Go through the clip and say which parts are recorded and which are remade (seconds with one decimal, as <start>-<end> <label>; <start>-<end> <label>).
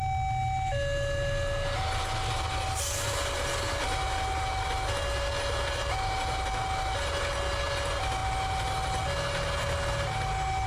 0.0-10.7 recorded